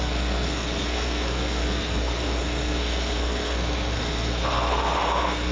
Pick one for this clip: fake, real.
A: fake